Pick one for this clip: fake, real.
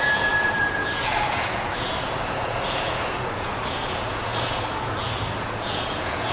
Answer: fake